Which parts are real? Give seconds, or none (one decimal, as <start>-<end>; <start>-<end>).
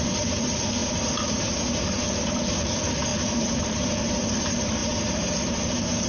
0.0-0.8; 2.0-3.1; 3.9-4.8